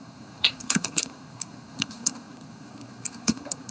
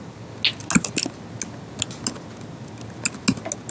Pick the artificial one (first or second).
first